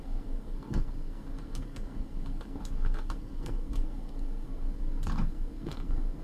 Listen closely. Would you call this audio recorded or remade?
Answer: remade